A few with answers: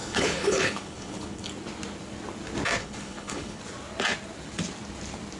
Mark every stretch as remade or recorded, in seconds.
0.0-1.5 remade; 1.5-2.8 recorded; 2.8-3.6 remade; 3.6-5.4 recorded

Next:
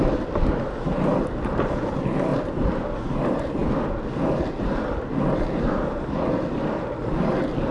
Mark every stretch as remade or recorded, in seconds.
0.0-2.3 recorded; 2.3-3.1 remade; 3.1-7.7 recorded

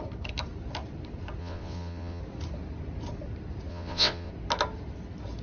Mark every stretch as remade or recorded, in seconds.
0.0-1.4 recorded; 1.4-2.2 remade; 2.2-3.7 recorded; 3.7-4.3 remade; 4.3-5.4 recorded

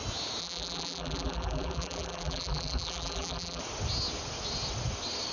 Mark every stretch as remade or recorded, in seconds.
0.0-0.4 recorded; 0.4-3.6 remade; 3.6-5.3 recorded

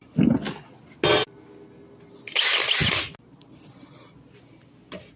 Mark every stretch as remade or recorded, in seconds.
0.0-5.2 recorded

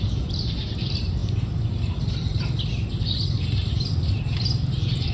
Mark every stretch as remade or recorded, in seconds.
0.0-5.1 recorded